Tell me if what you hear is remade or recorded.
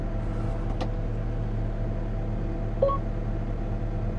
recorded